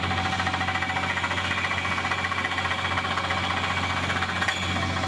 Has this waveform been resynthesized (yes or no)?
no